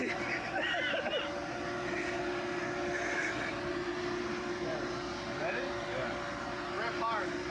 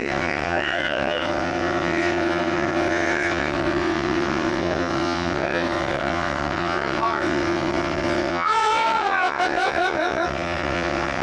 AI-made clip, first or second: second